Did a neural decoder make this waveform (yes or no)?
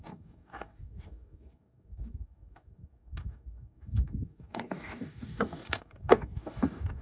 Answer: yes